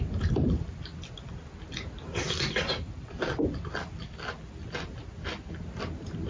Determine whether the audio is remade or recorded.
recorded